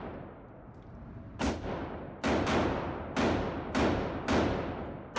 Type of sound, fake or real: real